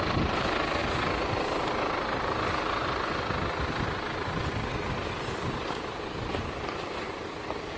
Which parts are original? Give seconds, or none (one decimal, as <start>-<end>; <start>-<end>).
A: 0.0-7.8